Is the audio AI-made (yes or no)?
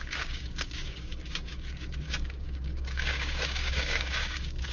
yes